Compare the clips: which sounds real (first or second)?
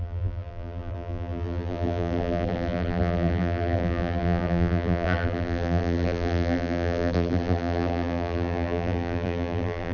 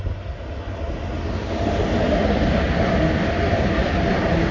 second